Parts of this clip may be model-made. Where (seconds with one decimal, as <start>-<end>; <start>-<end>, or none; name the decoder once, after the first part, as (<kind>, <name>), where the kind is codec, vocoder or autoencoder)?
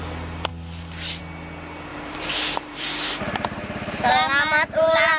1.9-4.1 (vocoder, BigVGAN v2)